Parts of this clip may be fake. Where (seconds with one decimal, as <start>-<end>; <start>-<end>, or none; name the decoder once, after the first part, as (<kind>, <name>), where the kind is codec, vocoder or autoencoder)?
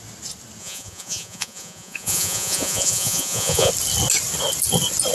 0.6-3.7 (vocoder, Vocos)